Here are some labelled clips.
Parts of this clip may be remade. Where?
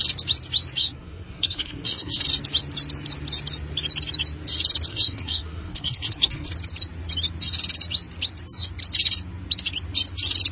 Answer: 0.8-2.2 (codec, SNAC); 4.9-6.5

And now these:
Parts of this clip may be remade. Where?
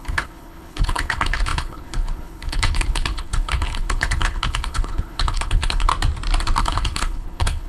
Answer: 0.0-5.9 (codec, HILCodec); 6.6-7.7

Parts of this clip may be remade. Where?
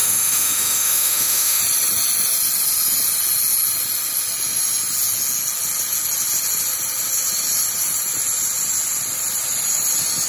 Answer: 0.0-1.6 (autoencoder, DAC-VAE)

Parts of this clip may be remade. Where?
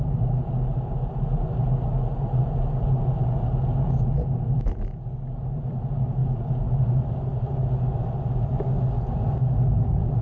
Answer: none